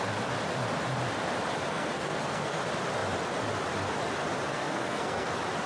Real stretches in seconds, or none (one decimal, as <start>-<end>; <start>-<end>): 0.0-1.7; 2.6-4.5; 5.3-5.7